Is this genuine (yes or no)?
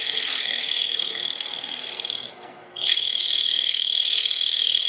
no